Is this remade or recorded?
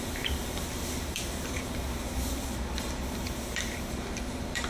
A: remade